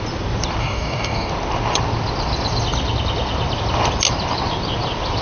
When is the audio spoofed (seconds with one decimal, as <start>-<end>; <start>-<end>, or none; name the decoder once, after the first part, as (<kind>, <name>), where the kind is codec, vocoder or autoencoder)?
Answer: 0.6-1.3 (codec, DAC)